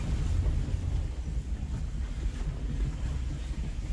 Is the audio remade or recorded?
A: recorded